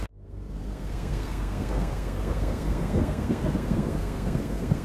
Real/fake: fake